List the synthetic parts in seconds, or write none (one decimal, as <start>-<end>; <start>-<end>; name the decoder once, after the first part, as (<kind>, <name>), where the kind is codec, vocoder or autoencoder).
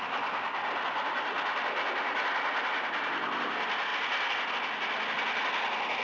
none